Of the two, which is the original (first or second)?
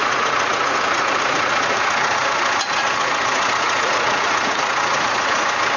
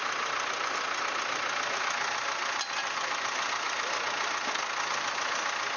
second